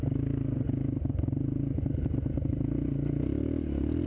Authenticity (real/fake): real